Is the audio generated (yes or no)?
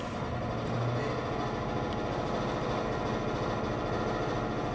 no